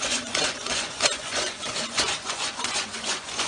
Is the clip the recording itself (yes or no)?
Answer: no